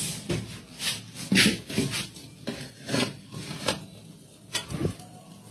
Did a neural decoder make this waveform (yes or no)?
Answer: no